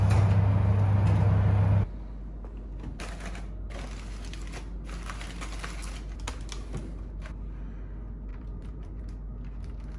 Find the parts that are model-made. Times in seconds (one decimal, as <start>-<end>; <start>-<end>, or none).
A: 8.3-9.0